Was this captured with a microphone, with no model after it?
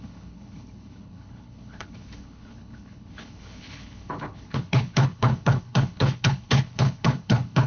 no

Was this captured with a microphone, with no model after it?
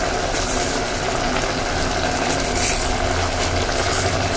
yes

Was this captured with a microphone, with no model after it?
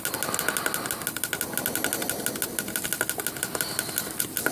yes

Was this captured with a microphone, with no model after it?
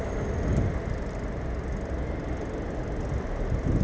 yes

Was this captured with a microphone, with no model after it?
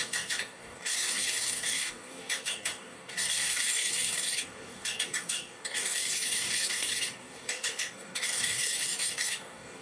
no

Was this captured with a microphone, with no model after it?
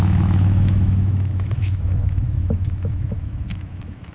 no